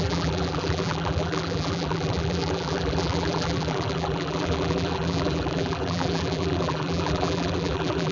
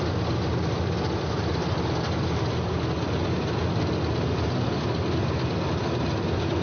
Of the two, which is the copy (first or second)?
first